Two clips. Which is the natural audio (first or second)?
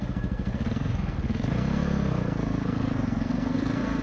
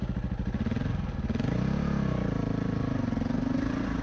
second